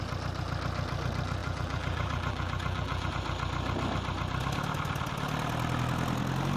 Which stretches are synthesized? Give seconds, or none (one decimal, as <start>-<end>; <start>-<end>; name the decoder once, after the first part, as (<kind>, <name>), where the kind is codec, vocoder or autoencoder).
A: 1.4-3.1 (vocoder, BigVGAN v2)